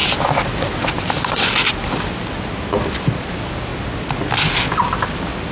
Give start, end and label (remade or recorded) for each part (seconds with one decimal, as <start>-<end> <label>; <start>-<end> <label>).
0.0-5.5 recorded